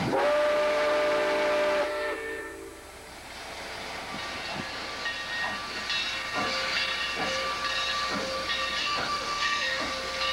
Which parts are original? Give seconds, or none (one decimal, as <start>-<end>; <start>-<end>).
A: 0.0-8.8; 9.9-10.3